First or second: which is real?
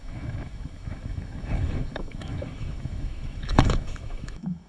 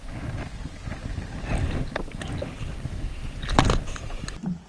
second